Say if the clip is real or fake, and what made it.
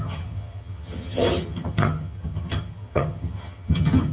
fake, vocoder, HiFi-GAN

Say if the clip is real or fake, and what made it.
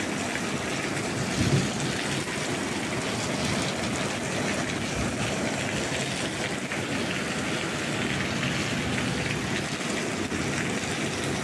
real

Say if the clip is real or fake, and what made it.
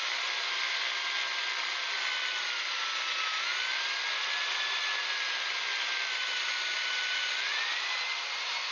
real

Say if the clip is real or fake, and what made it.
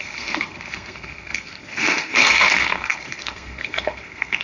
fake, codec, SNAC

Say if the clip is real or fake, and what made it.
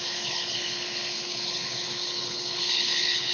fake, codec, HILCodec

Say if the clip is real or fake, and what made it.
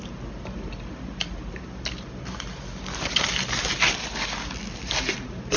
real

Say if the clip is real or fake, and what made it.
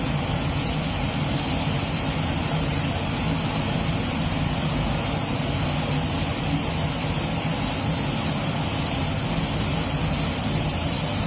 real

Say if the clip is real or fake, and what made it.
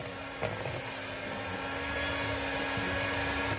real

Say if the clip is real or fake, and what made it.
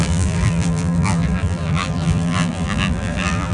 fake, vocoder, BigVGAN v2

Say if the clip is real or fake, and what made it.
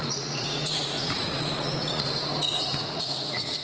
fake, vocoder, Vocos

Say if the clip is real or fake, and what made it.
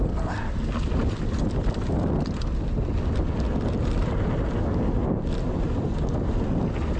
real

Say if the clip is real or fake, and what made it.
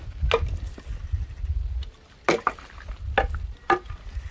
real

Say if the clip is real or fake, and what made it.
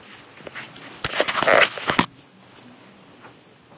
real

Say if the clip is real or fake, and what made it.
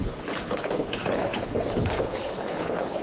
fake, codec, HILCodec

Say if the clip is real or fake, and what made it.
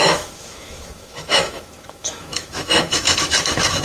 fake, autoencoder, DAC-VAE